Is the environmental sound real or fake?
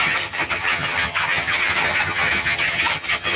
fake